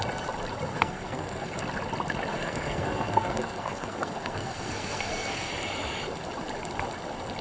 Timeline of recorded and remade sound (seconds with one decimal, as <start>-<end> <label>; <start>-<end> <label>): 0.0-0.7 recorded; 0.7-1.6 remade; 1.6-2.3 recorded; 2.3-5.5 remade; 5.5-7.4 recorded